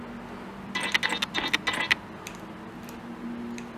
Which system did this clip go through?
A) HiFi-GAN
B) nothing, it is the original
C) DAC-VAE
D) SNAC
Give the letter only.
B